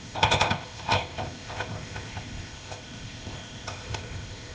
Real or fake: fake